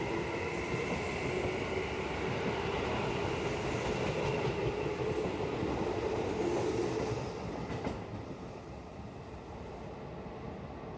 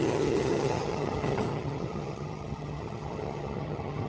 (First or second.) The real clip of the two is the first